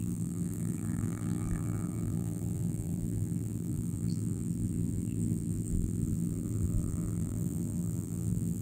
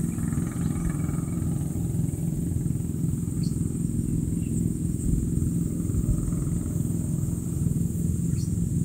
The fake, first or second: first